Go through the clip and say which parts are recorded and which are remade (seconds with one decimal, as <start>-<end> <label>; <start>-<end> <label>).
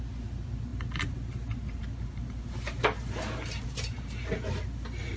0.0-5.2 recorded